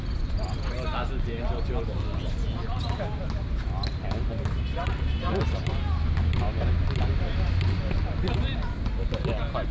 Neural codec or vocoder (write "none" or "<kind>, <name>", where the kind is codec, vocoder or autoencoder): none